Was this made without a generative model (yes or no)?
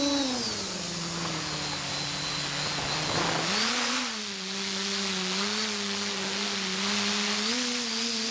yes